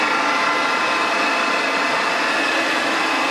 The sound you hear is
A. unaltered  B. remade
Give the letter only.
A